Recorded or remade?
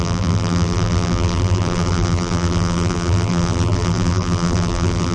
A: remade